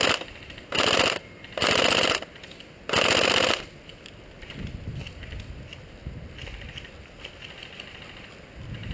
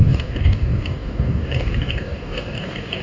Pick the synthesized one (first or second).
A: second